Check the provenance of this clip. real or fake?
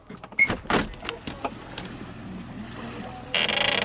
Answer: real